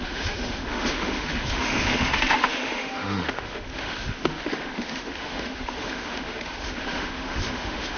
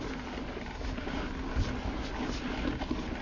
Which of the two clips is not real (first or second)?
first